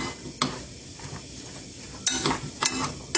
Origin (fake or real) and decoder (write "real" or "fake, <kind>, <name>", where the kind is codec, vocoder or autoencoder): real